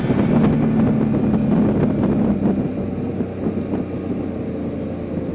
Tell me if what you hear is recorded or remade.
recorded